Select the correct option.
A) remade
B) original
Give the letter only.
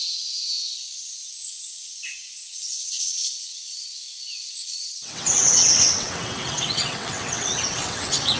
A